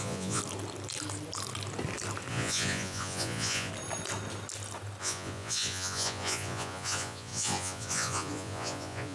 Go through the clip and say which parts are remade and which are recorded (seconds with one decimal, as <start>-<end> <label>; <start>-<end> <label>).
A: 0.0-0.4 remade; 0.4-2.3 recorded; 2.3-3.7 remade; 3.7-5.0 recorded; 5.0-9.1 remade